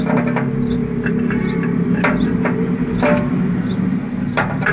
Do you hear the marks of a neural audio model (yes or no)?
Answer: no